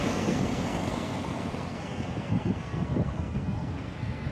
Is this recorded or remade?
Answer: remade